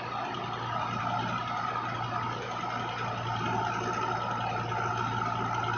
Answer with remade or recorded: recorded